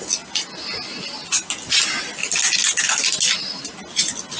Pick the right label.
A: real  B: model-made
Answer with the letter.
A